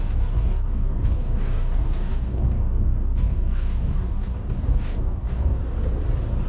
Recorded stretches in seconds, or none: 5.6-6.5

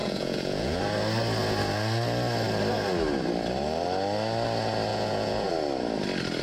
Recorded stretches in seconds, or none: 0.8-4.9; 5.5-6.4

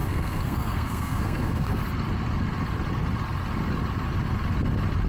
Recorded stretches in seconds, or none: 1.8-5.1

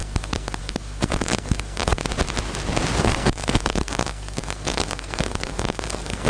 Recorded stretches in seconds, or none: 2.0-3.0

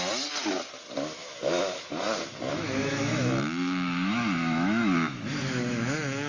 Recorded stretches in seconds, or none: 0.0-1.2; 1.9-2.5

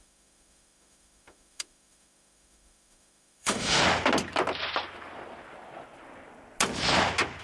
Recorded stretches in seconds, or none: 3.8-7.4

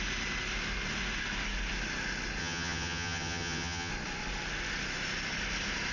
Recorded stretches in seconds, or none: 0.0-2.4; 3.9-5.9

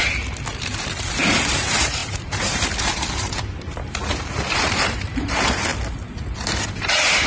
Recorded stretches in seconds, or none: 0.0-0.5; 5.7-6.8